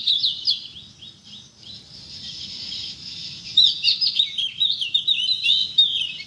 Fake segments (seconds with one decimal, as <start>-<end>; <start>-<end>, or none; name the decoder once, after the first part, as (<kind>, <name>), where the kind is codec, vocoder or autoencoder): none